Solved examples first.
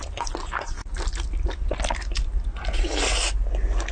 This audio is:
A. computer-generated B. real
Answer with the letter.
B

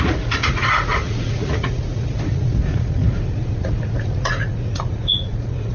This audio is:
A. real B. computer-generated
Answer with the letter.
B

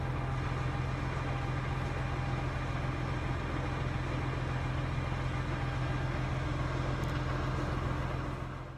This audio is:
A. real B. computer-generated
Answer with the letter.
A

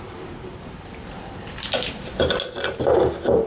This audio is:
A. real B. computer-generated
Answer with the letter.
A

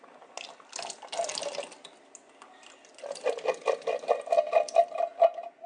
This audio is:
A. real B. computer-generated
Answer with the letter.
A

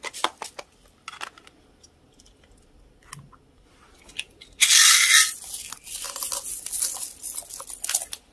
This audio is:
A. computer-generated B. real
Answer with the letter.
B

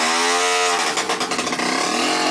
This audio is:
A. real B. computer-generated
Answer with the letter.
A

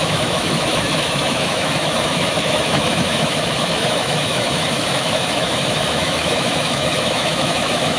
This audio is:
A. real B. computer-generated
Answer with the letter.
B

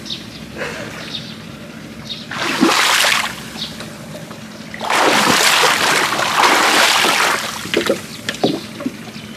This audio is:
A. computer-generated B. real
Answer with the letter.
B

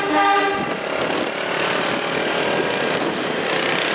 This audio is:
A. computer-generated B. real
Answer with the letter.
B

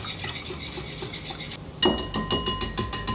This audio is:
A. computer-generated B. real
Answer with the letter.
B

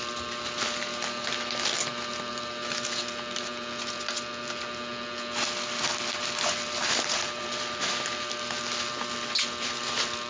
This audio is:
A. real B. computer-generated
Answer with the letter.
A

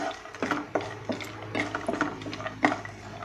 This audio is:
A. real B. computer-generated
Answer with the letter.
A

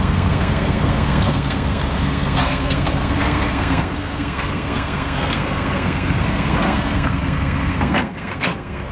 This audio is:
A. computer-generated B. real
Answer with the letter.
A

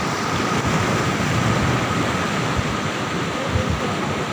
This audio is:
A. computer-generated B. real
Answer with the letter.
A